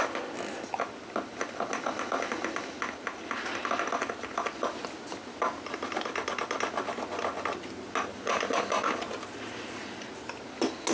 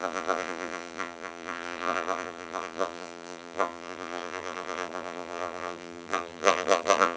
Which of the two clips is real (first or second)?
first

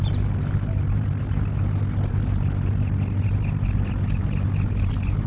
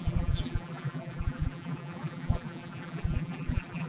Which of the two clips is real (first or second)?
first